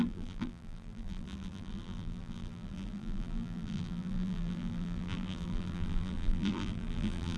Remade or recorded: remade